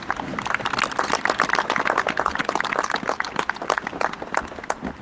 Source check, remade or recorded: recorded